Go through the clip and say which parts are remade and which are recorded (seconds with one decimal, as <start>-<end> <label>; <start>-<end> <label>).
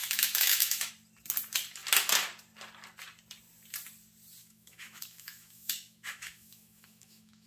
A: 0.0-0.9 remade; 0.9-4.4 recorded; 4.4-7.5 remade